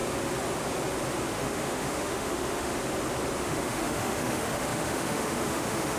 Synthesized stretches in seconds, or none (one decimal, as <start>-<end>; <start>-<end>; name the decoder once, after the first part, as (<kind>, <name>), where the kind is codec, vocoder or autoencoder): 1.3-2.7 (autoencoder, DAC-VAE); 3.4-6.0